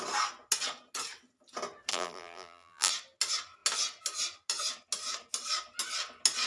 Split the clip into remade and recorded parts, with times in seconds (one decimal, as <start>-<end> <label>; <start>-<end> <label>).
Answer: 0.0-1.9 recorded; 1.9-2.9 remade; 2.9-6.5 recorded